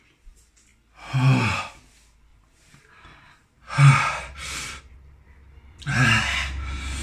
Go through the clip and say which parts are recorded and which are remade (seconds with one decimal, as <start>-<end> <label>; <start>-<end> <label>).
0.0-2.3 recorded; 2.3-5.5 remade; 5.5-7.0 recorded